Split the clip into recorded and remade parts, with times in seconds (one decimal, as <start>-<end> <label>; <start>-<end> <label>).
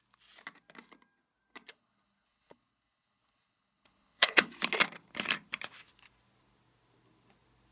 0.0-1.7 recorded; 1.7-4.5 remade; 4.5-7.7 recorded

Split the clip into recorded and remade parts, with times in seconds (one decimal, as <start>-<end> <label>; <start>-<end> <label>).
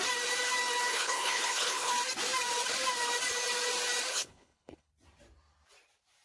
0.0-0.9 recorded; 0.9-1.9 remade; 1.9-4.1 recorded; 4.1-4.9 remade; 4.9-6.2 recorded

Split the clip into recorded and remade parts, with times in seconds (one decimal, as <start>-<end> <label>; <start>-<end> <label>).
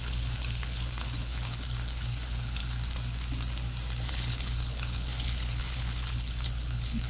0.0-2.6 remade; 2.6-4.1 recorded; 4.1-7.1 remade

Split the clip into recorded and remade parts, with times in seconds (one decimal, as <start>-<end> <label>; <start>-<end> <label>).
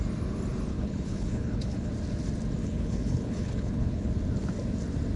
0.0-0.7 recorded; 0.7-1.9 remade; 1.9-2.6 recorded; 2.6-4.1 remade; 4.1-5.2 recorded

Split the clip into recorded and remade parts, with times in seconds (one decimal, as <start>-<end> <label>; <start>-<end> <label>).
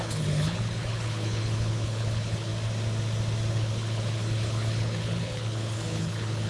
0.0-2.5 remade; 2.5-3.5 recorded; 3.5-6.5 remade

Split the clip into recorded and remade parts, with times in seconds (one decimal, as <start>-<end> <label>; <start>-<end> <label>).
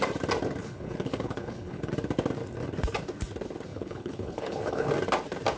0.0-0.6 recorded; 0.6-1.9 remade; 1.9-3.7 recorded; 3.7-4.9 remade; 4.9-5.6 recorded